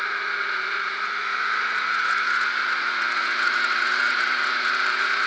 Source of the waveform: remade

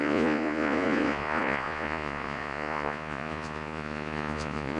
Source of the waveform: remade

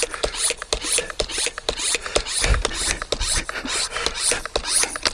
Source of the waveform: recorded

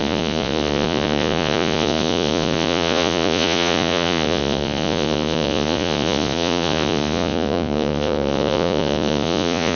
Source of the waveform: remade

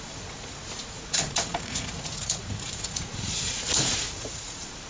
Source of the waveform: remade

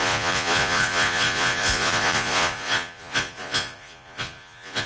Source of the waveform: remade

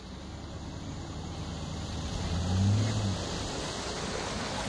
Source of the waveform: recorded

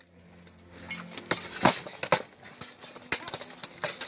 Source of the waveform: recorded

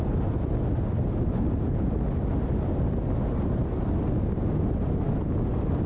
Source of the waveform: recorded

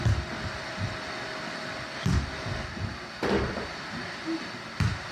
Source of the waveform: recorded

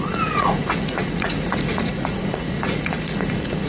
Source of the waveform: remade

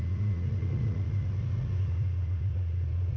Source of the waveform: remade